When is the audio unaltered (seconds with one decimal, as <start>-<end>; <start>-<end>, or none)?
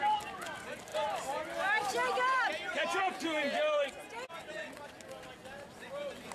0.0-6.3